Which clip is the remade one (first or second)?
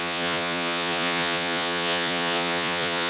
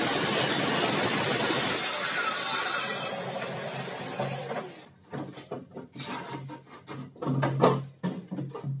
first